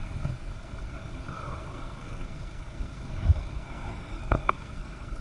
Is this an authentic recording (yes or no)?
no